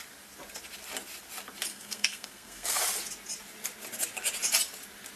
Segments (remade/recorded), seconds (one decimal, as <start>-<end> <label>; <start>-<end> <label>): 0.0-1.7 recorded; 1.7-2.8 remade; 2.8-5.2 recorded